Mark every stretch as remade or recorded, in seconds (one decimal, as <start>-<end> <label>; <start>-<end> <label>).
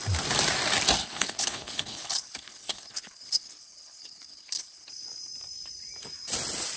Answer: 0.0-1.0 recorded; 1.0-4.9 remade; 4.9-6.8 recorded